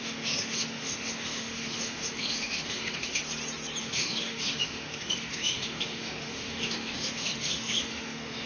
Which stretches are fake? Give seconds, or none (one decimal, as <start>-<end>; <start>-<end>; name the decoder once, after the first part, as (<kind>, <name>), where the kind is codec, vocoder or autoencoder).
0.0-3.2 (autoencoder, DAC-VAE); 3.8-8.5